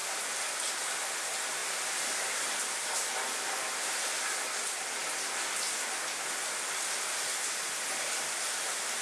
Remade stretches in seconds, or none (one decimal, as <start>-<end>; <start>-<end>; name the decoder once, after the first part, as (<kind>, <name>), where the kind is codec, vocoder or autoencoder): 0.0-0.7 (vocoder, BigVGAN v2); 1.6-3.6